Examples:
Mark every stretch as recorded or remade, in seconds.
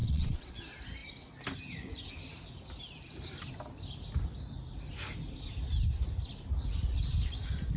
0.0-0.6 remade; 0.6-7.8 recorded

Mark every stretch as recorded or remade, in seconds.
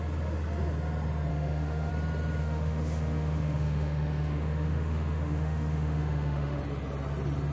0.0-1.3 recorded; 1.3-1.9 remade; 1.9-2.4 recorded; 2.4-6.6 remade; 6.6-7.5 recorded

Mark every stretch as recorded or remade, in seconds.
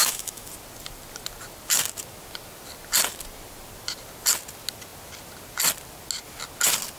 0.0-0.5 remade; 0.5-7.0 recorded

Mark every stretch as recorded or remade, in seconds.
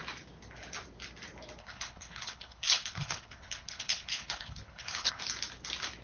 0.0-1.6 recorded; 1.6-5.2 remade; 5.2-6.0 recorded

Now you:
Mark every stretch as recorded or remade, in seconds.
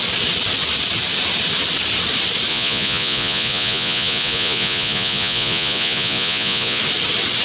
0.0-2.5 recorded; 2.5-6.8 remade; 6.8-7.4 recorded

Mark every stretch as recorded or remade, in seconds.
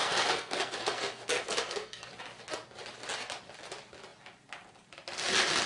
0.0-2.1 remade; 2.1-5.7 recorded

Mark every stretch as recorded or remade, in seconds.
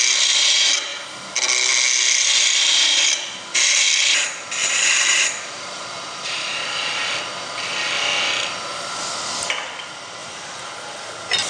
0.0-4.6 recorded; 4.6-7.0 remade; 7.0-10.2 recorded; 10.2-10.7 remade; 10.7-11.5 recorded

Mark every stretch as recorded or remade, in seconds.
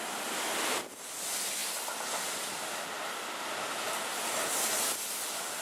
0.0-5.6 recorded